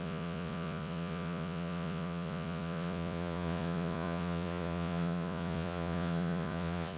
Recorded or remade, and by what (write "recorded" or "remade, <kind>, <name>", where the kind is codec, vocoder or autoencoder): remade, vocoder, Vocos